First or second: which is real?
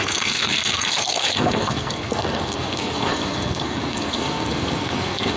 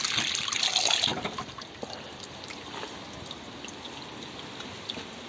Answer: second